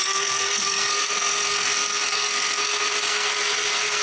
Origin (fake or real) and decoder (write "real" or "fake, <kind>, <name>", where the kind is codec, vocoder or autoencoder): fake, codec, SNAC